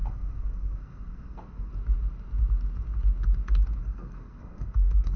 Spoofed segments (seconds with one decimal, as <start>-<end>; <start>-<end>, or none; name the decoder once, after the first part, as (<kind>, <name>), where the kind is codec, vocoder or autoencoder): 0.0-1.7 (codec, SNAC); 3.8-5.2